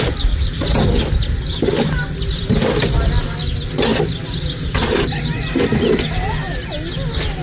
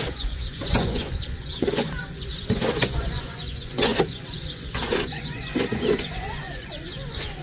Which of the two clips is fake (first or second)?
second